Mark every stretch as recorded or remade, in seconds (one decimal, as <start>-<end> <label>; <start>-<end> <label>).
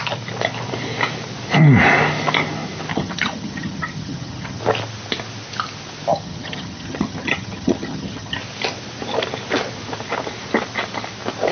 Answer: 0.0-2.9 recorded; 2.9-4.6 remade; 4.6-6.1 recorded; 6.1-8.4 remade; 8.4-11.5 recorded